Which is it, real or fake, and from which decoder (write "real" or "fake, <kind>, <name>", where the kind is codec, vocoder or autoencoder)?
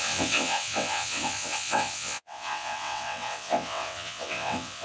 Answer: fake, vocoder, WaveNeXt